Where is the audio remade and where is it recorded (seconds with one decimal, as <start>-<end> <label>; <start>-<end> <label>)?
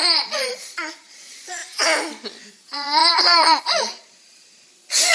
0.0-1.6 remade; 1.6-2.5 recorded; 2.5-5.1 remade